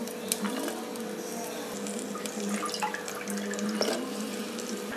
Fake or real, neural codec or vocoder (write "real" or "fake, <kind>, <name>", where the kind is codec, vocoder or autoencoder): fake, vocoder, BigVGAN v2